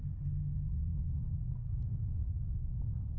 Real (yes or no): yes